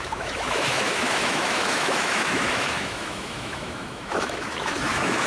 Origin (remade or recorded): remade